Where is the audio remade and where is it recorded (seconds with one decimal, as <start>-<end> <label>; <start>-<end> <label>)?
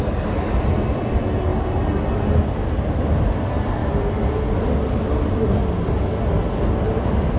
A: 0.0-7.4 recorded